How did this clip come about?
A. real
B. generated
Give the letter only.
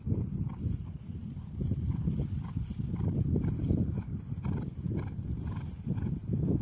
A